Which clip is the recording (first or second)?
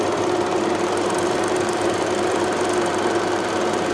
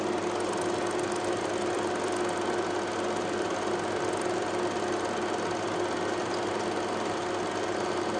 second